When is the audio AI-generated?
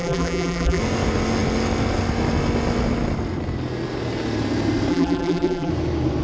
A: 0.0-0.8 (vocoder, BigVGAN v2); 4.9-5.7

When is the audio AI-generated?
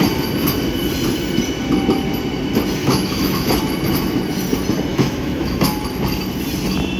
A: 2.8-3.5 (autoencoder, DAC-VAE); 4.9-5.7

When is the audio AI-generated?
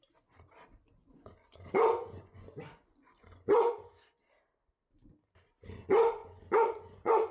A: 1.0-3.7 (vocoder, Vocos); 6.2-7.3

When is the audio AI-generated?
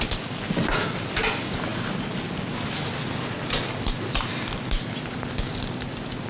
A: none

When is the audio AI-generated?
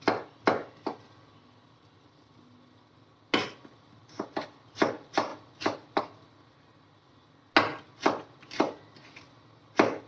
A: none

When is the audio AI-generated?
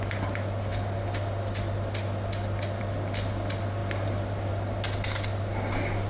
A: none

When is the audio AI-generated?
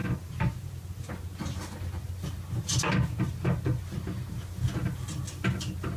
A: 0.0-1.0 (vocoder, BigVGAN v2)